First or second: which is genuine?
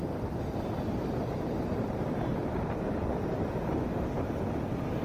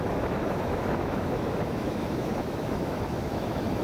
first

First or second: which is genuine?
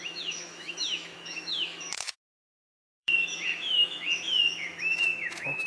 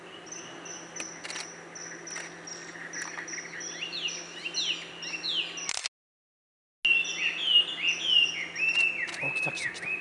second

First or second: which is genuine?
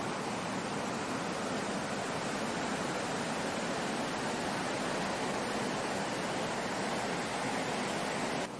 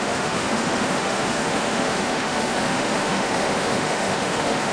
first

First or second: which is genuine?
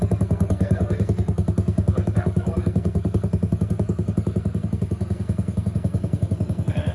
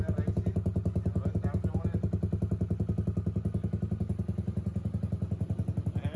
second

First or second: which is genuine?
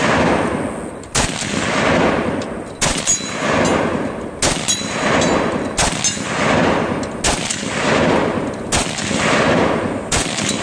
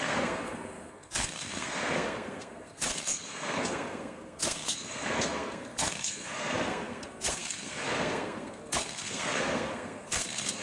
first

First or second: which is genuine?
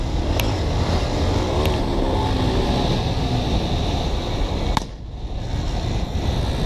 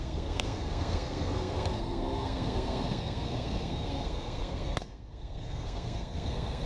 first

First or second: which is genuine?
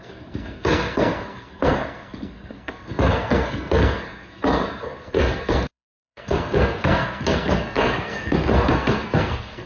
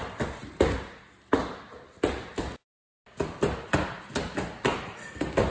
second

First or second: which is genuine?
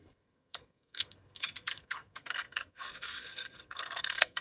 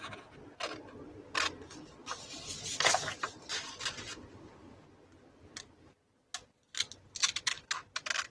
second